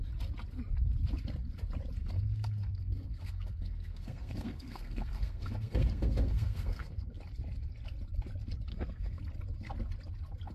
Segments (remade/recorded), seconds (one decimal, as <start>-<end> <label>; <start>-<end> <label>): 0.0-2.0 recorded; 2.0-7.2 remade; 7.2-8.7 recorded; 8.7-9.2 remade; 9.2-10.5 recorded